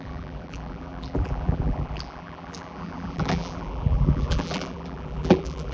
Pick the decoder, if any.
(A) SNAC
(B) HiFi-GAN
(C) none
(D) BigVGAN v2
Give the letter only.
D